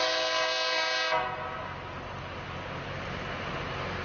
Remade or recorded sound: recorded